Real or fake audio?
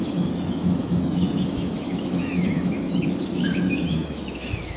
fake